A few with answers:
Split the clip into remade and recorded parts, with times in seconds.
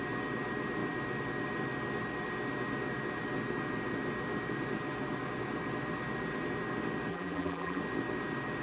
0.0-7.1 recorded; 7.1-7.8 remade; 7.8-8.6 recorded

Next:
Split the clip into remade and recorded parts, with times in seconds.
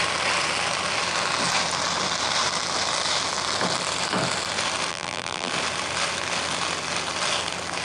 0.0-4.9 recorded; 4.9-5.5 remade; 5.5-7.8 recorded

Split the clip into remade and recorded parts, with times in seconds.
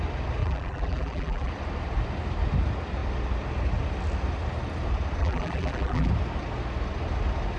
0.0-0.4 recorded; 0.4-1.5 remade; 1.5-5.2 recorded; 5.2-6.1 remade; 6.1-7.6 recorded